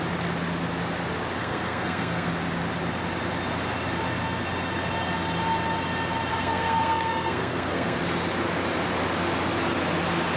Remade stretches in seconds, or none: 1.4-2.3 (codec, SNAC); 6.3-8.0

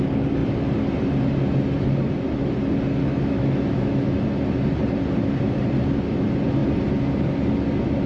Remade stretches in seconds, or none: 3.0-4.2 (autoencoder, DAC-VAE)

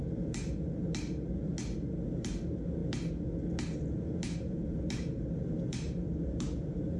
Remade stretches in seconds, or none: 0.0-1.5 (vocoder, BigVGAN v2); 2.1-2.8; 3.9-7.0

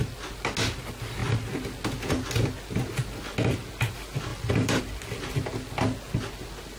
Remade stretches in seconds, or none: 4.3-4.8 (vocoder, BigVGAN v2)